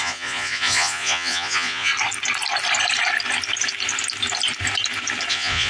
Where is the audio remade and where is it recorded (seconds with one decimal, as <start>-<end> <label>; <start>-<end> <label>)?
0.0-1.9 remade; 1.9-5.3 recorded; 5.3-5.7 remade